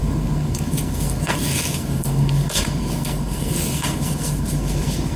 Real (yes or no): no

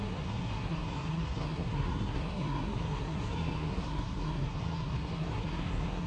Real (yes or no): no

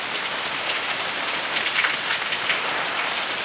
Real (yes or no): yes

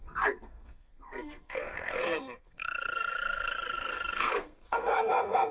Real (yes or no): no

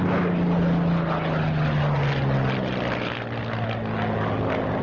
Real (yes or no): yes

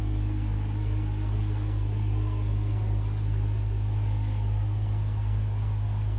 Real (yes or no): no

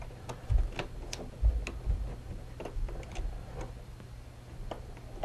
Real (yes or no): yes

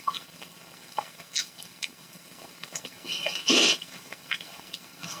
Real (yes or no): no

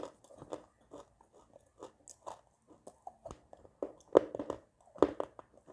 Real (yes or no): yes